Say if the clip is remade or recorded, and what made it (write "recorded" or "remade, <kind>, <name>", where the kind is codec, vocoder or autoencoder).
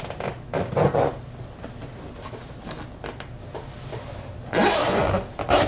recorded